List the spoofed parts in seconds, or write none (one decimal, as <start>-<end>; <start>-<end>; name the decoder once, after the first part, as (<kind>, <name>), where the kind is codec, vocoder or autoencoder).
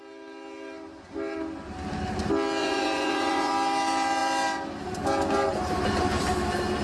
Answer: 2.6-3.5 (vocoder, Vocos)